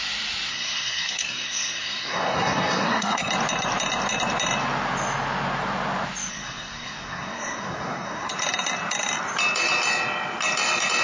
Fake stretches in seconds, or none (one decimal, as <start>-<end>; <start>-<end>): 0.5-3.3; 6.3-8.3